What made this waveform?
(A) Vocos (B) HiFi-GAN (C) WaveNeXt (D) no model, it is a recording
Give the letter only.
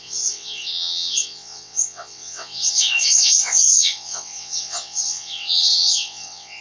C